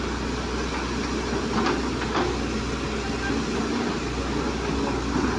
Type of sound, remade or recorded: recorded